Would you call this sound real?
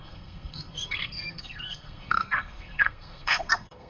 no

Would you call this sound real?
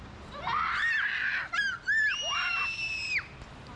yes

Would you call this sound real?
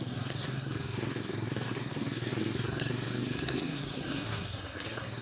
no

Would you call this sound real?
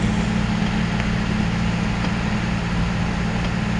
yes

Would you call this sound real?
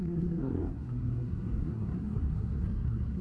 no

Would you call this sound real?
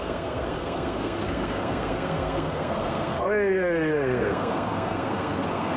no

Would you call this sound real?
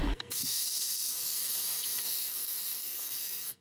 no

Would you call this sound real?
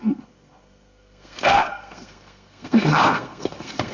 no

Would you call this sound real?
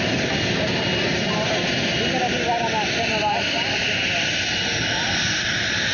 yes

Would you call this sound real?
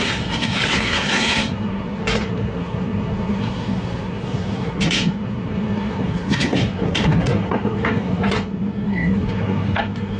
no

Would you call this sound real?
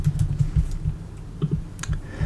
yes